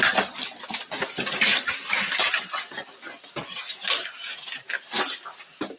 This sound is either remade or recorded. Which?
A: remade